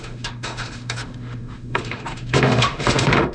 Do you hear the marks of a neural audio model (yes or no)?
yes